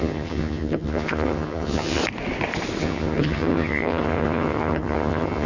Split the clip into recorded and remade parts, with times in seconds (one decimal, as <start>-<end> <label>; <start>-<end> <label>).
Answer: 0.0-2.0 remade; 2.0-2.8 recorded; 2.8-5.5 remade